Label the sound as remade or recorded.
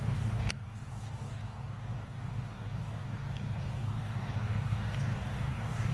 remade